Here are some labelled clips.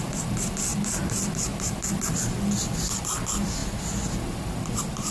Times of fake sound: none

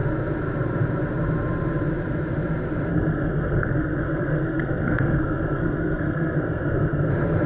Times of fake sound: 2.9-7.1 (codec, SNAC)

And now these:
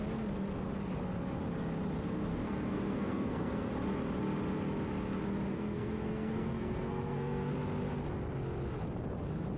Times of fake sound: 2.3-3.7 (codec, SNAC); 5.5-7.5

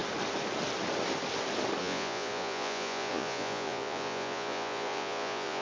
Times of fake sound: 1.8-5.6 (vocoder, Vocos)

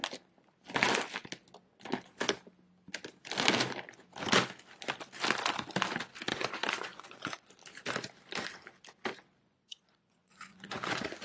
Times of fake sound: 6.3-7.5 (vocoder, Vocos); 9.4-11.2